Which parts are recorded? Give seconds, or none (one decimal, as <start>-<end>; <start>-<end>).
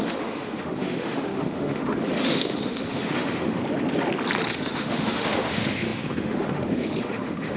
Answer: 3.6-4.5